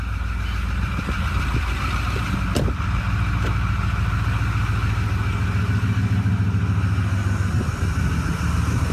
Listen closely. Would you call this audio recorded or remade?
recorded